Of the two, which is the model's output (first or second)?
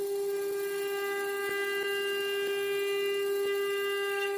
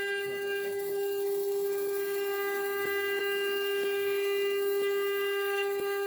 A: second